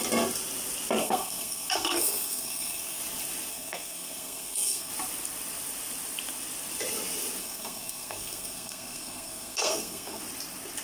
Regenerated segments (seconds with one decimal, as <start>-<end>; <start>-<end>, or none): 1.0-3.0; 3.5-4.9; 7.4-10.2